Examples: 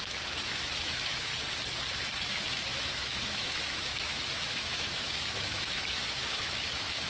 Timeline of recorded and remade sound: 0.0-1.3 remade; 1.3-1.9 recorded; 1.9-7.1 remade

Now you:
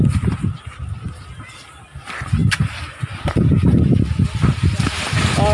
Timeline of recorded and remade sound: 0.0-5.5 recorded

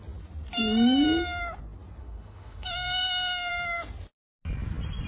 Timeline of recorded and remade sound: 0.0-2.0 recorded; 2.0-3.5 remade; 3.5-5.1 recorded

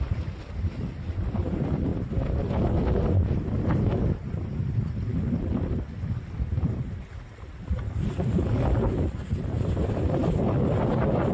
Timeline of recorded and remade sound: 0.0-11.3 recorded

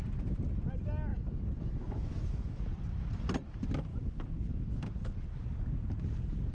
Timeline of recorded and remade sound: 0.0-1.1 recorded; 1.1-2.6 remade; 2.6-3.9 recorded; 3.9-4.8 remade; 4.8-6.5 recorded